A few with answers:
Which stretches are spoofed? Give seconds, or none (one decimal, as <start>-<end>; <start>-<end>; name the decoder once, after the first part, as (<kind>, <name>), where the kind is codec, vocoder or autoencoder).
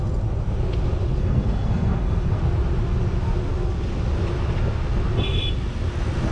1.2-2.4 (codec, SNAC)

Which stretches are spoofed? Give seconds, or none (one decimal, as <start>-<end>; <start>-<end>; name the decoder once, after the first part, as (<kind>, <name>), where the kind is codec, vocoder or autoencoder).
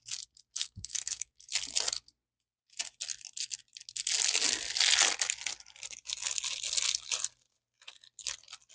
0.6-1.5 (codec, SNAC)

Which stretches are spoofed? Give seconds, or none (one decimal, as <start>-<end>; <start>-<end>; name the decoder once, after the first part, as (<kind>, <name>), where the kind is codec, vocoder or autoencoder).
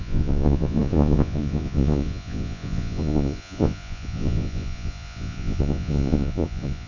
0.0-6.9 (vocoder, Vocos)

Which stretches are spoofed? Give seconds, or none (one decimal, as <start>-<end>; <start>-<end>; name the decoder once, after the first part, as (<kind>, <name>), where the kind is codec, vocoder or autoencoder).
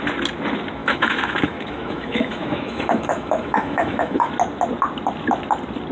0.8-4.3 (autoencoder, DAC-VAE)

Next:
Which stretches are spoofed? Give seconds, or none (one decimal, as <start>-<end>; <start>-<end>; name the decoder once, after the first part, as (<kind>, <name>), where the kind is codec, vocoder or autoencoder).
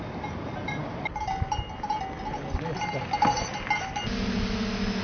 none